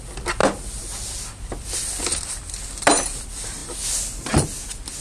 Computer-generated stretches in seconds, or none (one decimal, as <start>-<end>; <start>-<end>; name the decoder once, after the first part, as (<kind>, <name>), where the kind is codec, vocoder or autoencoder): none